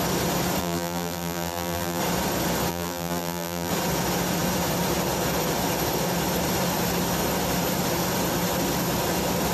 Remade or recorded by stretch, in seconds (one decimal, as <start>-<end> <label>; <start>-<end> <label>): 0.0-0.6 recorded; 0.6-2.0 remade; 2.0-2.7 recorded; 2.7-3.7 remade; 3.7-9.5 recorded